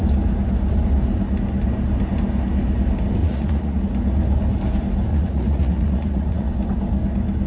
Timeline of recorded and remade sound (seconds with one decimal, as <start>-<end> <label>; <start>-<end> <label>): 0.0-3.2 recorded; 3.2-3.8 remade; 3.8-5.1 recorded; 5.1-6.5 remade; 6.5-7.5 recorded